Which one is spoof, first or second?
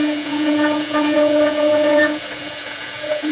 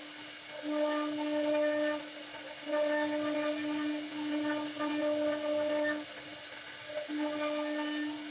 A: first